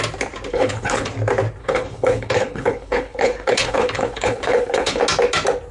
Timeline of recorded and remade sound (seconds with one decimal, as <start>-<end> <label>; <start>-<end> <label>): 0.0-0.5 recorded; 0.5-1.1 remade; 1.1-1.6 recorded; 1.6-5.0 remade; 5.0-5.7 recorded